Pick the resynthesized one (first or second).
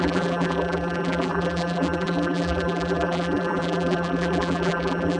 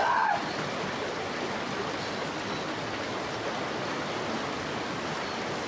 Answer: first